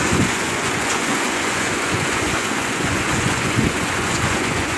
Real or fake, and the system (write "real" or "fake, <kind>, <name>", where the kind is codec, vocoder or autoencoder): fake, vocoder, Vocos